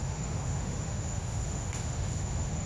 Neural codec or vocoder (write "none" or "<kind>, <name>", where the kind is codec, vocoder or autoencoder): autoencoder, DAC-VAE